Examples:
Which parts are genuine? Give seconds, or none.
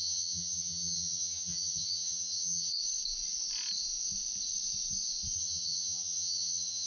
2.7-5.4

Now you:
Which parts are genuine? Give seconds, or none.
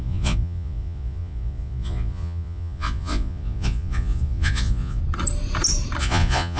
5.0-6.0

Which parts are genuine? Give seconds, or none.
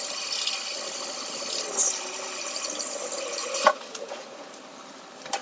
0.0-3.4; 4.5-5.4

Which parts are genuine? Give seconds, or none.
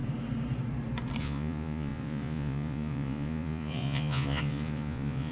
0.0-1.2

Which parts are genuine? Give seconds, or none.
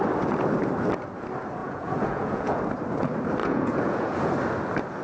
0.0-1.6; 2.6-3.4; 4.3-5.0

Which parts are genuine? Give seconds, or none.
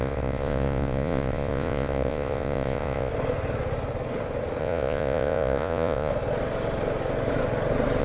3.1-4.6; 6.1-8.0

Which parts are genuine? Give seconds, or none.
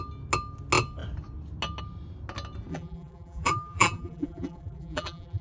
0.0-2.7